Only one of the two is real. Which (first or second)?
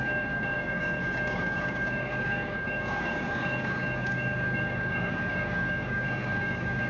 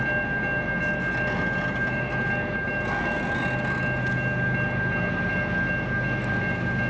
second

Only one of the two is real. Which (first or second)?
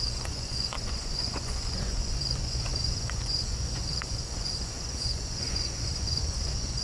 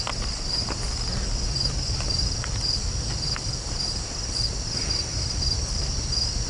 second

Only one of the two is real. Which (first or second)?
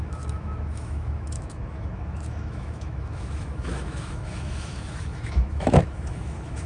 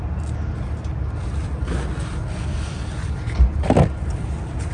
second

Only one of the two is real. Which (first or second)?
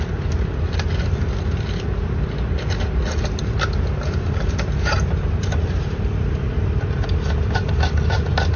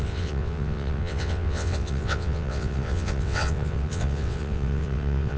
first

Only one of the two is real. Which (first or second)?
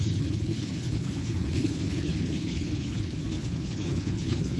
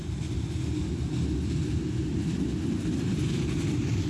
second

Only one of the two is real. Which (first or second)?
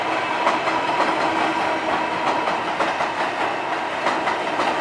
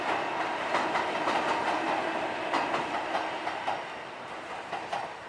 first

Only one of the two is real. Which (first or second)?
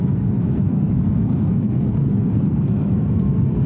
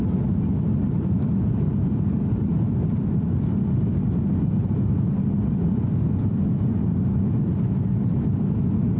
second